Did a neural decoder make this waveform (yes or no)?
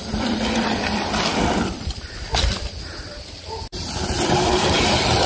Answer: yes